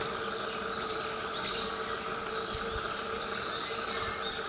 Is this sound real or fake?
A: real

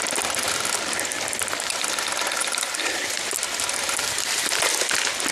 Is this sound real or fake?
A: real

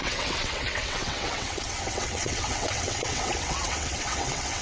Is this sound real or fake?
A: fake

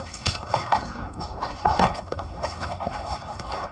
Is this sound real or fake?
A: fake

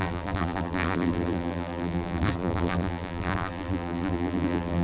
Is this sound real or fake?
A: fake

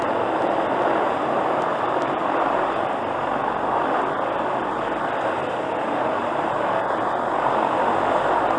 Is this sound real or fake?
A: real